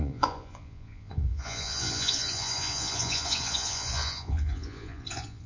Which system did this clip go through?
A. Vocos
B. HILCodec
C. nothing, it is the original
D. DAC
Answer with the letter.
A